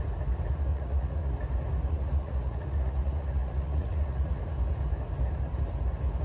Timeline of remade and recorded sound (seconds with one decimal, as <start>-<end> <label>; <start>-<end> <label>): 0.0-0.7 recorded; 0.7-1.4 remade; 1.4-1.9 recorded; 1.9-4.4 remade; 4.4-6.2 recorded